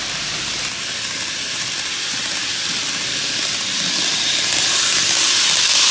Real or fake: real